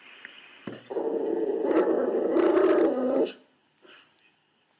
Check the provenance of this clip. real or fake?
real